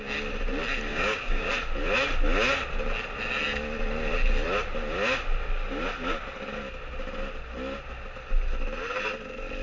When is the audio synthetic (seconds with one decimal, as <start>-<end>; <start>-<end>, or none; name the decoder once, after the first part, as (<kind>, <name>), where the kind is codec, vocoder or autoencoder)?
0.9-1.5 (codec, DAC)